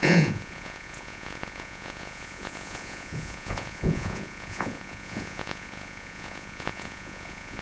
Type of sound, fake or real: fake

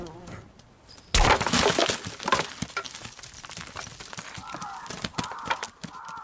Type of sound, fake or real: real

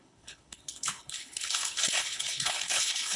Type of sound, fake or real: fake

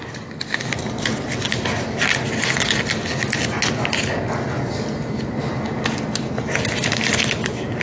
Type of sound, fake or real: real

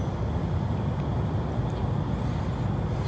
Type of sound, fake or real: real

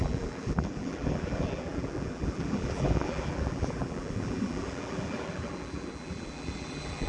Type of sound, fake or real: fake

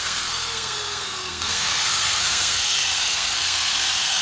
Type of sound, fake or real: fake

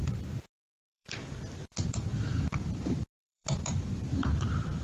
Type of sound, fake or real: fake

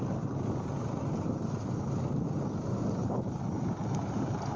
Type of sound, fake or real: real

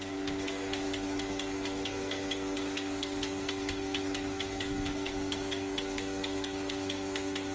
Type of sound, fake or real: fake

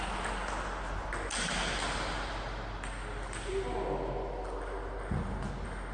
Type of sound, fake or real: real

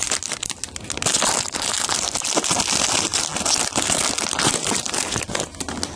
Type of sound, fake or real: real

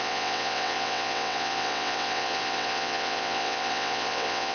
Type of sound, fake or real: fake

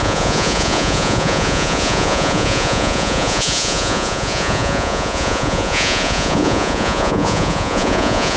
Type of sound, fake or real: fake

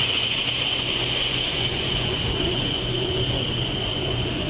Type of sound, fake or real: fake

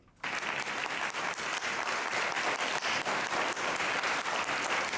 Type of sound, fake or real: real